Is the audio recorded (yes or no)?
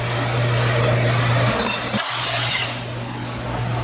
yes